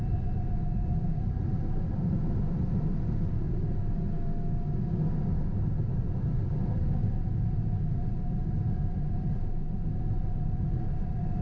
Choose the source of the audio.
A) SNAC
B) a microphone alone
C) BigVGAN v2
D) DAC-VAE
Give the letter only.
B